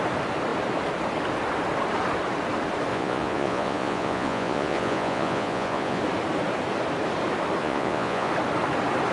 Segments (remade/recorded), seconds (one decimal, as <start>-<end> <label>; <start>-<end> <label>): 0.0-2.9 recorded; 2.9-6.0 remade; 6.0-7.6 recorded; 7.6-8.3 remade; 8.3-9.1 recorded